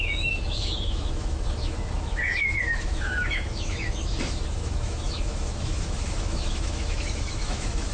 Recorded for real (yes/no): no